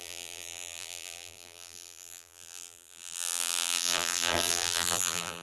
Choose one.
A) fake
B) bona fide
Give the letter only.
A